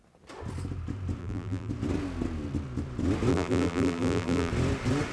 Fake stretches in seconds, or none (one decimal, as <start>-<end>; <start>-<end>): 1.2-1.7; 3.3-4.5